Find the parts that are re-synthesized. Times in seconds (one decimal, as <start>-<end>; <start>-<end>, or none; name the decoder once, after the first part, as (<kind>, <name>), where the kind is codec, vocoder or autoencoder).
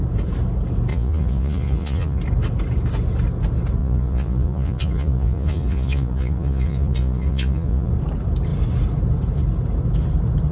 0.9-2.2 (vocoder, Vocos); 3.8-7.9